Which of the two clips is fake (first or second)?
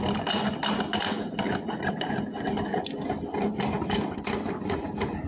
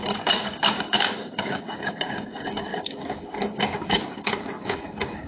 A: second